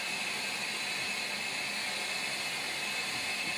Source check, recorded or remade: recorded